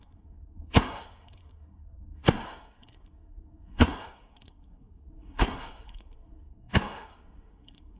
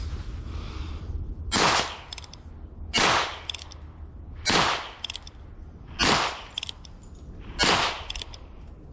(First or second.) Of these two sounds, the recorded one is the second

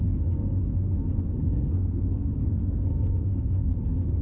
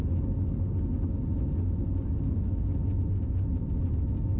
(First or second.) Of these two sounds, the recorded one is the second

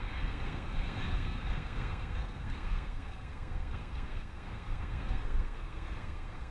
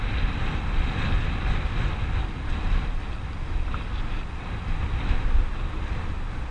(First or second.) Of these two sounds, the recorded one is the second